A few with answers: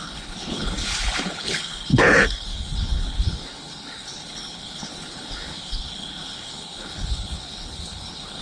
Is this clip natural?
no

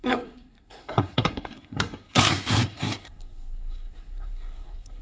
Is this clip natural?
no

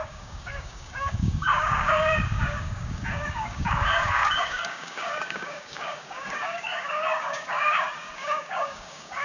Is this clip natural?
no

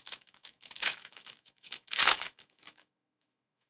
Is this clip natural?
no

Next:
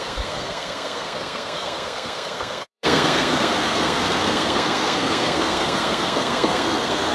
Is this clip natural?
no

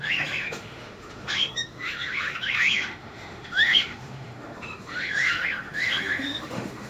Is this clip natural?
no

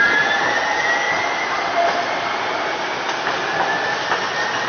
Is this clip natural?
yes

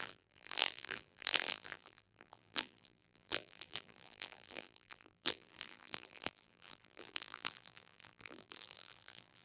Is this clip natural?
no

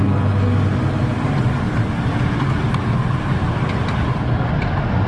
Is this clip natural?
yes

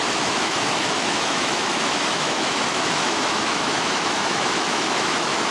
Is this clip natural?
no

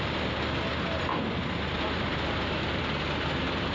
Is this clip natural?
yes